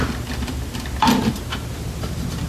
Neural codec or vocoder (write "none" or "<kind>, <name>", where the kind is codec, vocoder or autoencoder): none